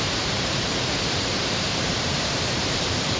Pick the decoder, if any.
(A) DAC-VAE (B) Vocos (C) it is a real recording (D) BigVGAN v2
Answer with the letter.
D